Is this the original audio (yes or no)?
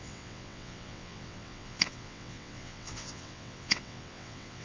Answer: no